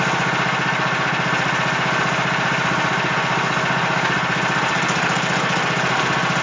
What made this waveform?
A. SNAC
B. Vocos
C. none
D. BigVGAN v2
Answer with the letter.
C